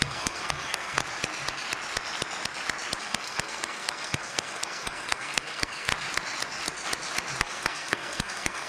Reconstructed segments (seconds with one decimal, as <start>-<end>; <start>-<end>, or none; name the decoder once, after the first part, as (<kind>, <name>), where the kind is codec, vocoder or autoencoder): 0.0-1.0 (codec, SNAC); 3.0-5.9; 7.4-8.7